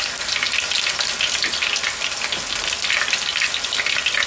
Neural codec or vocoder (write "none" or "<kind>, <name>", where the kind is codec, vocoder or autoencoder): none